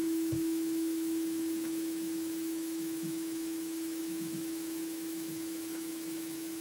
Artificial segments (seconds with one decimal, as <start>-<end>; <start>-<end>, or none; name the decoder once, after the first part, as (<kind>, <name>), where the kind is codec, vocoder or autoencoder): 0.0-6.6 (autoencoder, DAC-VAE)